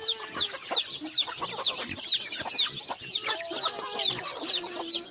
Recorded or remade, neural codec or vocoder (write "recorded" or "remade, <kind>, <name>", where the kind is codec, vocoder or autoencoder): recorded